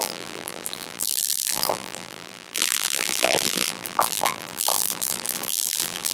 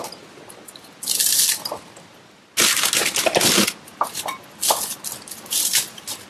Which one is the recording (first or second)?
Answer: second